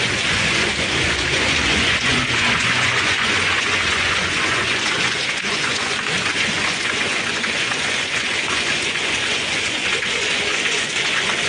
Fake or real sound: fake